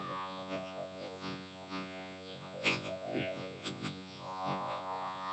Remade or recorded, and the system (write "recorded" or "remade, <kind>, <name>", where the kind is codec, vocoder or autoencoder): remade, vocoder, Vocos